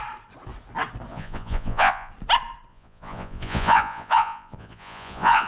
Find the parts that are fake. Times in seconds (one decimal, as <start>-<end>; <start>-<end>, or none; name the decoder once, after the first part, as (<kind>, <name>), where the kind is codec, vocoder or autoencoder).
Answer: 1.1-2.1 (vocoder, Vocos); 2.7-5.5